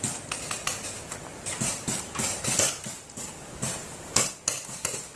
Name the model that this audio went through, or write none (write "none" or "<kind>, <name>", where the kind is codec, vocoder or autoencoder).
none